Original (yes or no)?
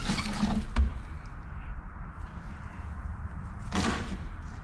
yes